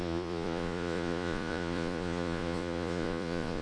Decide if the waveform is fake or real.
fake